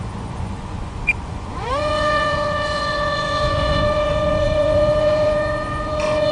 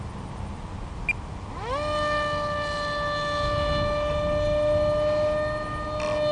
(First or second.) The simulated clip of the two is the first